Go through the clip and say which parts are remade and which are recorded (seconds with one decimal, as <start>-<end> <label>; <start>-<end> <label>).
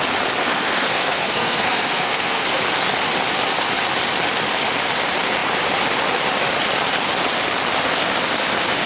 0.0-0.4 recorded; 0.4-2.6 remade; 2.6-8.9 recorded